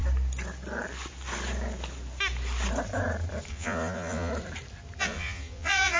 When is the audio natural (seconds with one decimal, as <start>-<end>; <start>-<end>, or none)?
0.0-3.5; 4.3-5.0